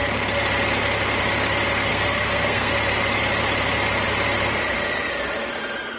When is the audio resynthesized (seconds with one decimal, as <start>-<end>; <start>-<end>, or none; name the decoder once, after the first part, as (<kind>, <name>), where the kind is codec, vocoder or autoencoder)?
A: 1.9-2.7 (codec, SNAC)